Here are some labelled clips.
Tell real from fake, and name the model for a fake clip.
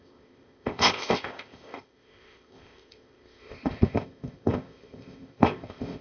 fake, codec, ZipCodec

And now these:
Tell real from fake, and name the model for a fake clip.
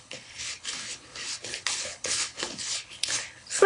fake, codec, HILCodec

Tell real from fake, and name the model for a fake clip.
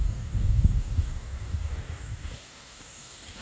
fake, codec, DAC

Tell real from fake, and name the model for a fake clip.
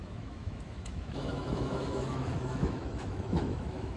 fake, autoencoder, DAC-VAE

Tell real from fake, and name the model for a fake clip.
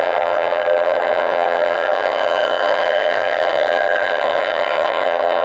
fake, vocoder, HiFi-GAN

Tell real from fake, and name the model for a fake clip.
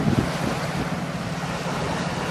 real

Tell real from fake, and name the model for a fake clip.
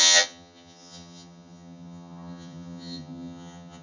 fake, vocoder, HiFi-GAN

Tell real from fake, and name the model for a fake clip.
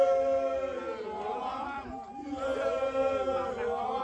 real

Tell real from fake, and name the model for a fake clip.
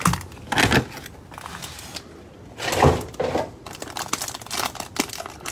real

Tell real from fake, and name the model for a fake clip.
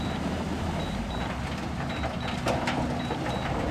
fake, vocoder, BigVGAN v2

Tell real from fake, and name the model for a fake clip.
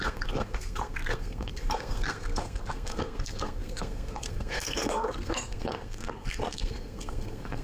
fake, codec, SNAC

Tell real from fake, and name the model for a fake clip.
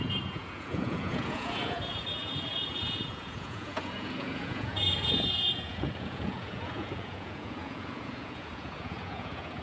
fake, vocoder, Vocos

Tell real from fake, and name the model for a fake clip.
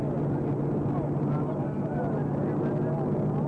real